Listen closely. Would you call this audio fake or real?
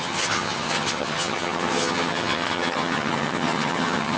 fake